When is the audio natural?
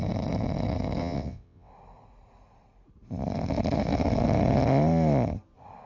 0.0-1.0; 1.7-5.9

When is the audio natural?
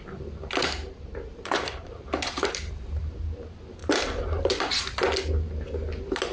0.0-0.6; 3.0-3.8; 4.6-6.3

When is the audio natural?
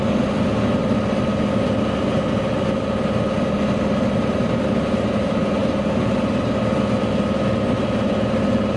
0.0-8.8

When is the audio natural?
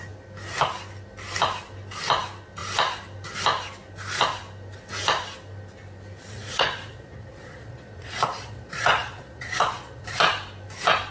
0.0-6.3; 10.2-11.1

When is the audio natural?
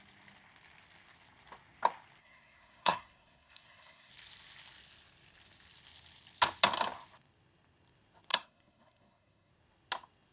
0.0-2.2; 4.1-8.3; 9.5-10.3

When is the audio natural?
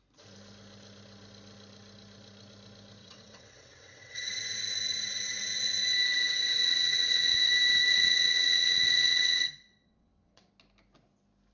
0.0-3.0; 4.3-6.6; 7.4-7.9; 10.5-11.5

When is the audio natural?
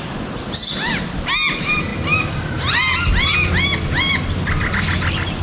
0.0-5.4